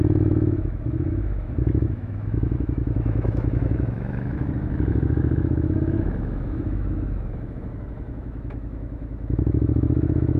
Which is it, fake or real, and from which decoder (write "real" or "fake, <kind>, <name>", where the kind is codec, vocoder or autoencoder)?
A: fake, autoencoder, DAC-VAE